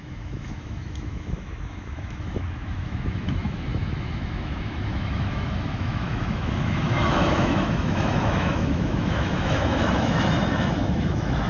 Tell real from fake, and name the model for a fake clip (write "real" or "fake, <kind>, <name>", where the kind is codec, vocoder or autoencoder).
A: fake, autoencoder, DAC-VAE